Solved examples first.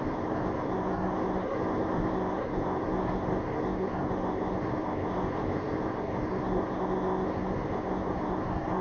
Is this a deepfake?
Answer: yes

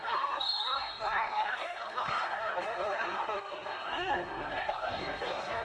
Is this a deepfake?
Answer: yes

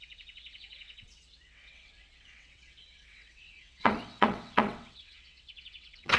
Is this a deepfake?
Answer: yes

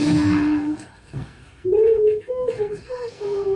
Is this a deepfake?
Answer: yes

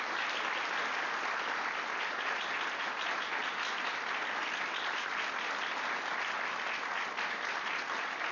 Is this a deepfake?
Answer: no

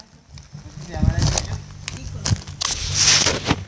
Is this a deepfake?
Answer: no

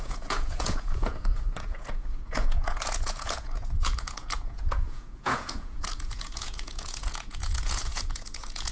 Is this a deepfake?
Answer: yes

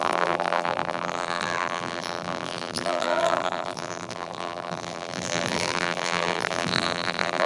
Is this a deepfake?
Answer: yes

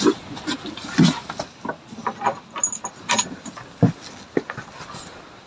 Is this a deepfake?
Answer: no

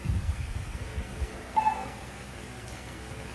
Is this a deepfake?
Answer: yes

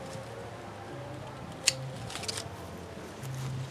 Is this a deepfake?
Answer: no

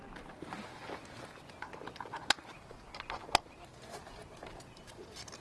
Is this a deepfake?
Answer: no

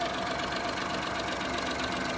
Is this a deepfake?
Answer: no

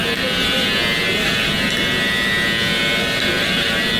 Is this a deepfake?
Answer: no